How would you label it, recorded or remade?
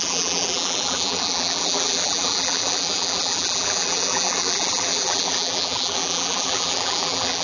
remade